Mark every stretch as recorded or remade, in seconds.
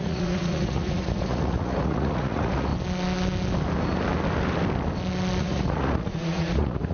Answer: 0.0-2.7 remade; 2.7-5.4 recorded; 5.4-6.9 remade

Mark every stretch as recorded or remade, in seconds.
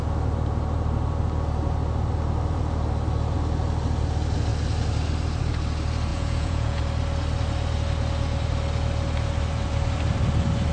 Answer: 0.0-6.1 recorded; 6.1-6.8 remade; 6.8-10.7 recorded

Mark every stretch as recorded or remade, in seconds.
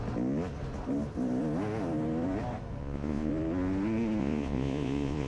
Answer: 0.0-2.8 recorded; 2.8-3.3 remade; 3.3-4.2 recorded; 4.2-5.3 remade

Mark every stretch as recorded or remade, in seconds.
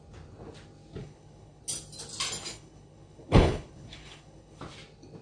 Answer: 0.0-1.0 recorded; 1.0-1.6 remade; 1.6-2.5 recorded; 2.5-4.6 remade; 4.6-5.2 recorded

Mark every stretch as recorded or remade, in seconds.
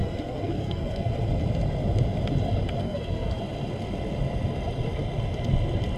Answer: 0.0-1.1 remade; 1.1-2.8 recorded; 2.8-3.4 remade; 3.4-6.0 recorded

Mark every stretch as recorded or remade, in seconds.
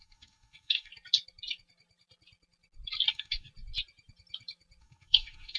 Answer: 0.0-0.9 remade; 0.9-3.1 recorded; 3.1-3.5 remade; 3.5-4.8 recorded; 4.8-5.6 remade